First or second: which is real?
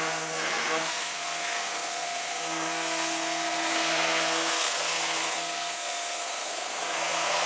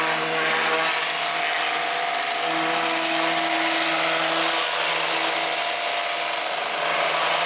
second